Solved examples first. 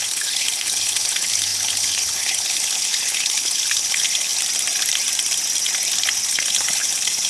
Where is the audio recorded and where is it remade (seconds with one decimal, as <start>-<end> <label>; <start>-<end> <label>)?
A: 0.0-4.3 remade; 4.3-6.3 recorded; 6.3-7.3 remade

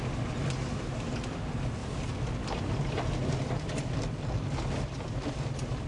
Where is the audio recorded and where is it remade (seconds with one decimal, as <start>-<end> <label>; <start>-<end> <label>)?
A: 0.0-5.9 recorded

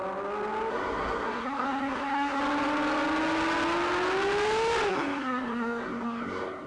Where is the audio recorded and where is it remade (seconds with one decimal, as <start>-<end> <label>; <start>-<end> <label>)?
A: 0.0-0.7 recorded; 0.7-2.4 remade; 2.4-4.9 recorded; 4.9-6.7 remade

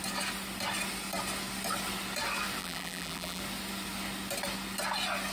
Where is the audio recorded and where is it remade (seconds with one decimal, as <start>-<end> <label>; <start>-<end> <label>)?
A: 0.0-2.6 recorded; 2.6-3.4 remade; 3.4-5.3 recorded

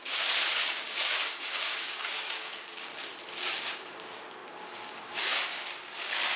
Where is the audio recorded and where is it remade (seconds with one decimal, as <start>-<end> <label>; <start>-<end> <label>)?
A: 0.0-2.9 remade; 2.9-3.5 recorded; 3.5-6.4 remade